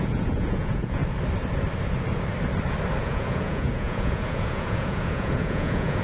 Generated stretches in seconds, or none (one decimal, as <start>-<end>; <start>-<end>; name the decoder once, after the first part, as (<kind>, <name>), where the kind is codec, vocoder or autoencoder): 0.0-1.0 (vocoder, Vocos); 3.0-6.0